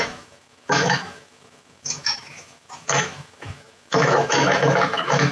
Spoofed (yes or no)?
yes